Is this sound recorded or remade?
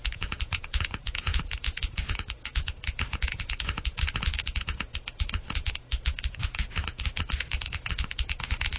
remade